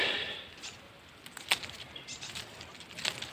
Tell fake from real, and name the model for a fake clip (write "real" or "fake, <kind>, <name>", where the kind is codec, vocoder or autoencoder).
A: real